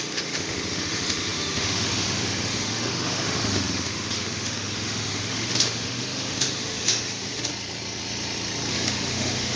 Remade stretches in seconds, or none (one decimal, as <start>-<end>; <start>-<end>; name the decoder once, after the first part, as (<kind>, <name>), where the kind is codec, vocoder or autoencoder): 0.0-7.5 (autoencoder, DAC-VAE); 8.7-9.6

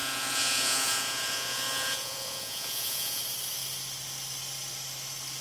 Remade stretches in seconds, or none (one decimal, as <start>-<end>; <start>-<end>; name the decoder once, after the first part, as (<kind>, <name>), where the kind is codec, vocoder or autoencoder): 0.0-3.2 (vocoder, Vocos)

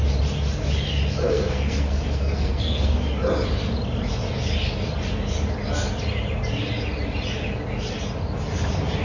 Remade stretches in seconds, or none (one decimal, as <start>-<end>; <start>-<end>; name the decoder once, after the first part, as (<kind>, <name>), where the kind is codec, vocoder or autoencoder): 1.2-3.0 (codec, SNAC)

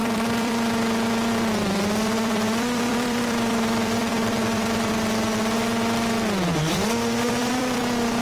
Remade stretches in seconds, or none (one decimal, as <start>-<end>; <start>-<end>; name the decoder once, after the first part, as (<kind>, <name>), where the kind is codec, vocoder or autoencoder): 0.0-4.9 (vocoder, BigVGAN v2); 6.5-8.2

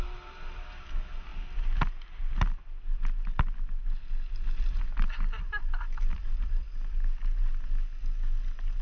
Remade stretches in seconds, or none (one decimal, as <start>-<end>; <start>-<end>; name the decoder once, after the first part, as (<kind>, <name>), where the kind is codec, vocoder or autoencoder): 0.0-2.6 (vocoder, BigVGAN v2); 4.6-7.0

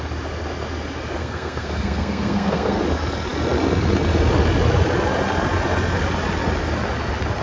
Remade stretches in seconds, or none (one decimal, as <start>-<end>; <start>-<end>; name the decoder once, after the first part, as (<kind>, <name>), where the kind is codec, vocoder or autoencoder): 1.2-2.8 (codec, SNAC)

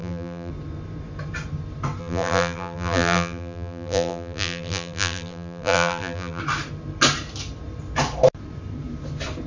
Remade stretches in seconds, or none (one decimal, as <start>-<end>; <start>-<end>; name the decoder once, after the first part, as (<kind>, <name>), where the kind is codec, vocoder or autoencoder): 0.0-0.5 (vocoder, BigVGAN v2); 2.0-6.4

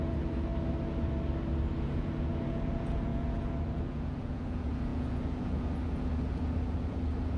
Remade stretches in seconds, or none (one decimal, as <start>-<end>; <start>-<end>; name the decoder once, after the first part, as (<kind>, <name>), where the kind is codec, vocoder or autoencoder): 0.0-0.5 (vocoder, Vocos); 1.8-7.4